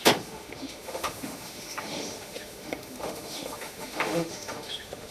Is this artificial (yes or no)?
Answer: yes